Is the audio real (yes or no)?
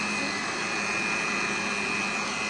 yes